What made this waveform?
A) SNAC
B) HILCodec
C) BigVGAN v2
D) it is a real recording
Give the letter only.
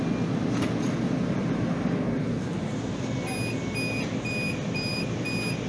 D